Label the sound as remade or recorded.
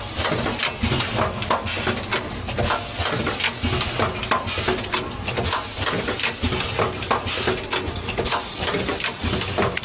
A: recorded